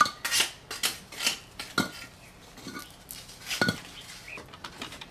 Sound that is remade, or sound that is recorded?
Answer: recorded